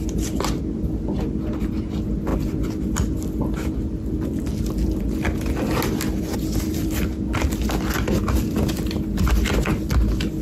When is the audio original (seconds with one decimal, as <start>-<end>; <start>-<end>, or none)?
0.0-10.4